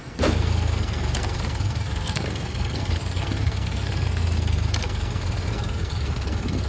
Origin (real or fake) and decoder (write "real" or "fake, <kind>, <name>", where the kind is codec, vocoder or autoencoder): fake, codec, SNAC